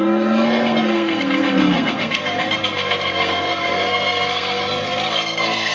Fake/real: fake